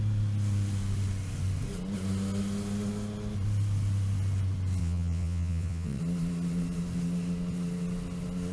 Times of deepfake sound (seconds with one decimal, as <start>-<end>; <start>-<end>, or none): 4.8-6.0